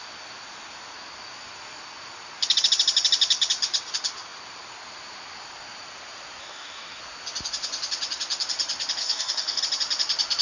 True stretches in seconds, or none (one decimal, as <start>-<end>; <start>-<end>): 0.0-6.4; 7.0-9.0; 9.6-10.4